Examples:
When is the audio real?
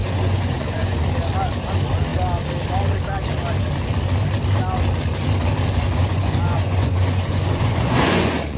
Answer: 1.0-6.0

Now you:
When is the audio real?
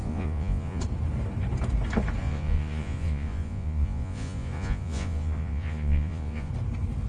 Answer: 0.8-2.2; 6.5-7.1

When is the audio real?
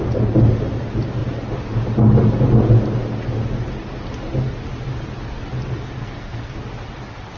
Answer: 0.0-6.0; 6.5-7.4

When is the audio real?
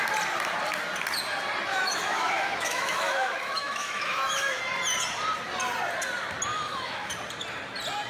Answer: 0.0-1.7; 4.6-6.5; 7.1-8.1